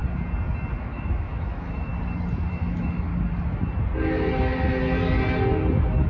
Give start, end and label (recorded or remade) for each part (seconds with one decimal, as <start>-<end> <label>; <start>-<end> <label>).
0.0-0.8 recorded; 0.8-1.9 remade; 1.9-2.5 recorded; 2.5-3.1 remade; 3.1-6.1 recorded